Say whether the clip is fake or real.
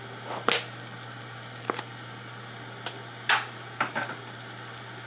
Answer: real